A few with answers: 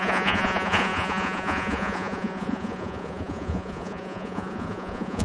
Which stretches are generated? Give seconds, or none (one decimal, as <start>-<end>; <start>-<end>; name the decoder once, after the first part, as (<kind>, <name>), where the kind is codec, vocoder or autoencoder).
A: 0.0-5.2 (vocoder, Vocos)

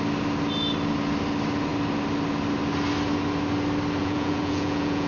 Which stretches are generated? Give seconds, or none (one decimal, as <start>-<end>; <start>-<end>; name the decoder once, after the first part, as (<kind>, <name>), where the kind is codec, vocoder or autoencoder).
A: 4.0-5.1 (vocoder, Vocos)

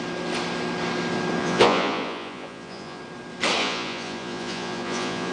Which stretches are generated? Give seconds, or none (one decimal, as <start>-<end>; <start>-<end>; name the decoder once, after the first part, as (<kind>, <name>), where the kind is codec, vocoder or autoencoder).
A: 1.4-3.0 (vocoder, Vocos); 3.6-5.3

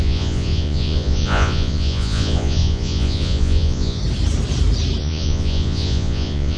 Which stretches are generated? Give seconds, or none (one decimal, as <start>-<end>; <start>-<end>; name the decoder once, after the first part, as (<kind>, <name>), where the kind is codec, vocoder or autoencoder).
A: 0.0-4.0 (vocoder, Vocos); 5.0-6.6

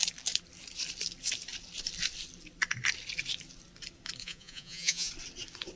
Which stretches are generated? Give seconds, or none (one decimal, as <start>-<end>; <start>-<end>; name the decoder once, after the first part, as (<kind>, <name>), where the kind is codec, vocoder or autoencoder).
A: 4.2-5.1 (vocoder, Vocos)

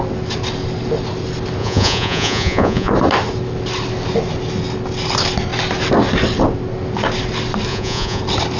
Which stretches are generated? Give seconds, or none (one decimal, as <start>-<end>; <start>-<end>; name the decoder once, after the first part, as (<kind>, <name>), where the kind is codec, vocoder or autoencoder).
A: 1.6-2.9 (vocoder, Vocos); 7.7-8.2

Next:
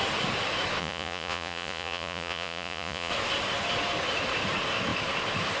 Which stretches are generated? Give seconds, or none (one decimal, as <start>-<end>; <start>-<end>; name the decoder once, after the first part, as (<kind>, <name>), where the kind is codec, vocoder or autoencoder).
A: 0.8-3.1 (vocoder, Vocos)

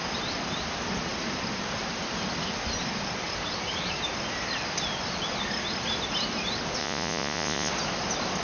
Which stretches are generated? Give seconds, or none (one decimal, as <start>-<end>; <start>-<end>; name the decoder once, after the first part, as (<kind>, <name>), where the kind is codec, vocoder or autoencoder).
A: 6.8-7.7 (vocoder, Vocos)